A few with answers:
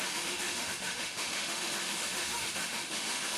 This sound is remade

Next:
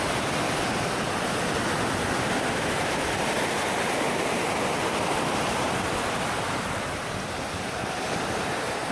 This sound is recorded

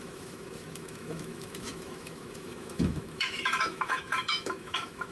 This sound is remade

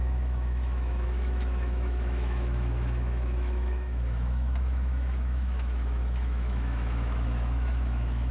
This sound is remade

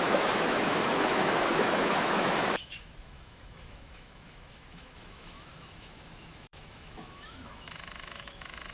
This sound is remade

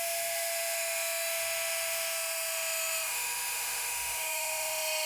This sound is remade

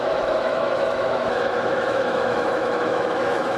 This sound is remade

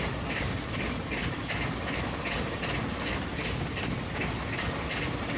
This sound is recorded